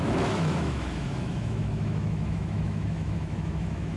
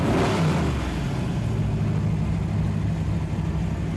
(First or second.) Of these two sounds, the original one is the second